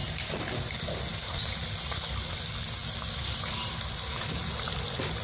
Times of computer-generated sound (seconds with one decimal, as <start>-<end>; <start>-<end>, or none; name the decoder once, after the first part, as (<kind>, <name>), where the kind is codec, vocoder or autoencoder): none

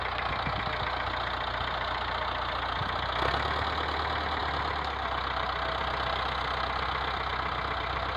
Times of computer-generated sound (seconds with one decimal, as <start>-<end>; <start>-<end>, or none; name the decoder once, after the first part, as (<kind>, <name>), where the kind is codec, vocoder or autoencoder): none

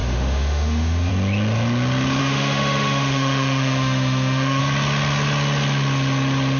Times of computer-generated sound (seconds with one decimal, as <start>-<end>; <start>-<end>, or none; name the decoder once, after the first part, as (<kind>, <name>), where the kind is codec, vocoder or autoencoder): 0.0-1.1 (autoencoder, DAC-VAE); 2.2-4.6

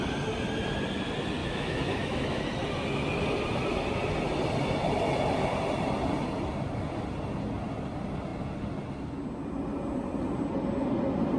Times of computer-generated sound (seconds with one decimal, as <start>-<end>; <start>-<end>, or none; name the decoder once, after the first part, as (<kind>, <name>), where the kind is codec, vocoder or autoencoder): 1.4-2.4 (autoencoder, DAC-VAE)